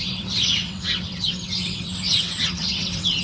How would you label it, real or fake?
fake